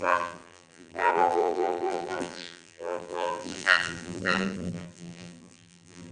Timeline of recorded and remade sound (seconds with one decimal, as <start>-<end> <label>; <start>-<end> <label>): 0.0-6.1 remade